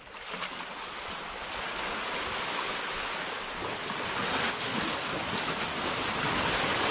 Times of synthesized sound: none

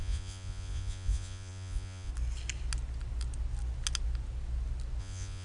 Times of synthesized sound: 0.0-2.1; 5.0-5.4

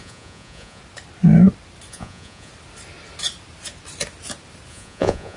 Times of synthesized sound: 0.0-0.8; 1.9-2.5; 4.7-5.4

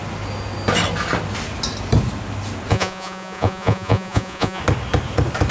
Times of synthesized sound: 2.7-4.6

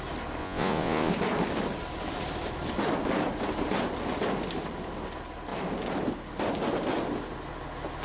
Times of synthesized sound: 0.4-1.1

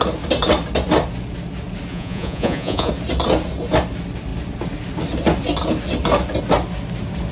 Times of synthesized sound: 1.9-2.9

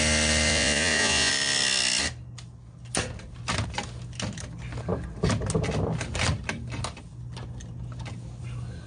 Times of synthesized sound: 0.5-1.3

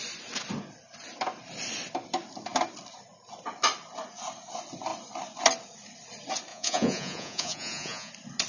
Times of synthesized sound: 6.5-8.1